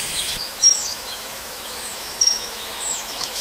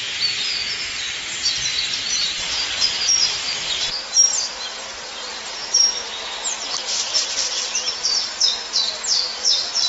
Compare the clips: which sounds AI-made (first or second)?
first